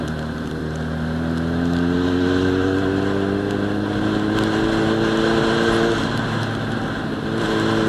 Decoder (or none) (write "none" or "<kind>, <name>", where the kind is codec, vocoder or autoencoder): none